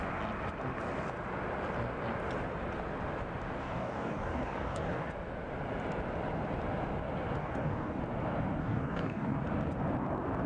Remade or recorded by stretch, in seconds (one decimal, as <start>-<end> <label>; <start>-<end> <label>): 0.0-3.6 recorded; 3.6-5.1 remade; 5.1-7.4 recorded; 7.4-8.0 remade; 8.0-8.6 recorded; 8.6-9.4 remade; 9.4-10.5 recorded